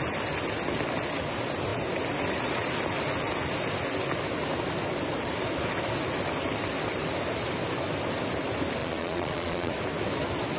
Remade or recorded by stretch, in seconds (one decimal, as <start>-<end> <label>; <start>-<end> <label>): 0.0-8.8 recorded; 8.8-9.7 remade; 9.7-10.6 recorded

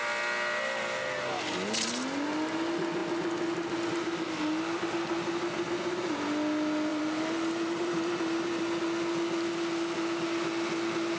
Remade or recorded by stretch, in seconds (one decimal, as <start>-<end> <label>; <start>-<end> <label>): 0.0-6.9 recorded; 6.9-8.6 remade; 8.6-11.2 recorded